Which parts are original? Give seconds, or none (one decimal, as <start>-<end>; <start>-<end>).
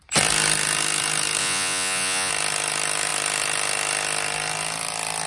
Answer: 0.0-1.4; 2.3-5.3